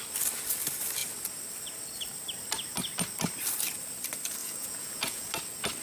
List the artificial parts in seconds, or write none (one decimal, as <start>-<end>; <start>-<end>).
4.4-5.3